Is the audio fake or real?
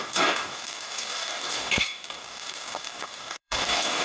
fake